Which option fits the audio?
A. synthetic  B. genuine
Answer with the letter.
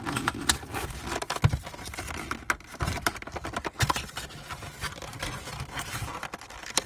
B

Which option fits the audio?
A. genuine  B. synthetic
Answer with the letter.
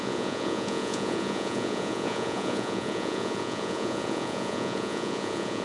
B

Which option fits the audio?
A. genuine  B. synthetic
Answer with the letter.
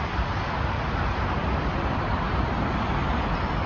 A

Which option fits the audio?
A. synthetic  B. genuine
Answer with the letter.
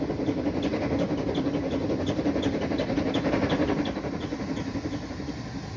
B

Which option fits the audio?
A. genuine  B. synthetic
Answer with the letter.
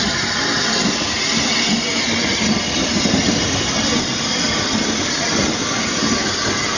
A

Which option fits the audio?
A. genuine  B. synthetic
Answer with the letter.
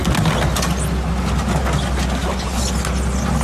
A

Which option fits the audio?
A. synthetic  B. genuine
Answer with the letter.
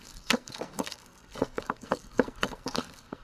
A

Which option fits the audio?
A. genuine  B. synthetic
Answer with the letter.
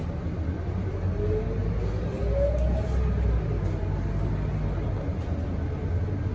A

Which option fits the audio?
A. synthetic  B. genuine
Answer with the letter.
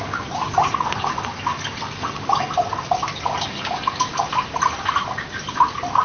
B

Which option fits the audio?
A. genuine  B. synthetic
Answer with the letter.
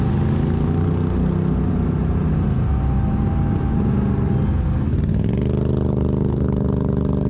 A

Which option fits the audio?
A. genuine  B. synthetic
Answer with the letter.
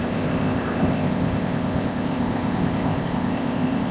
B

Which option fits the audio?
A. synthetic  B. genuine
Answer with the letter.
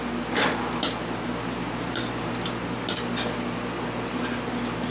B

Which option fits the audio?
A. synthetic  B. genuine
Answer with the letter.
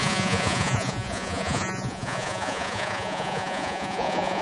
A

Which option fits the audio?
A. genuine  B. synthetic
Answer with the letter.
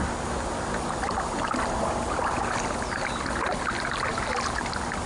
A